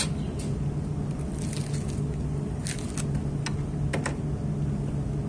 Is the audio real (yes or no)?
yes